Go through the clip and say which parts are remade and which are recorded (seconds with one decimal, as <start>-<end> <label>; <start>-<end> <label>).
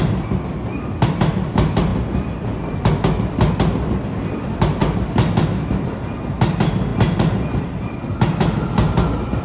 0.0-9.4 recorded